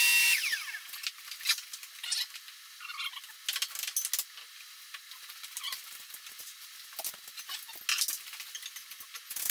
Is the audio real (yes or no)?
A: yes